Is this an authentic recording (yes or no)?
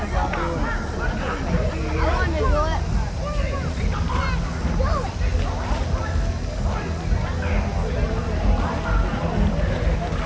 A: yes